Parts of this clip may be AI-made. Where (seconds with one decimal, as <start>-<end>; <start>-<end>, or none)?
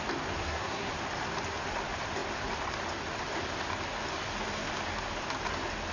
0.4-0.9